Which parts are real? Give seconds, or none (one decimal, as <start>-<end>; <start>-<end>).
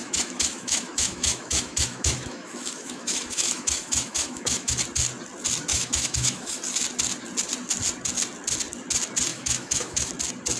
4.8-5.7; 6.6-9.3; 10.1-10.6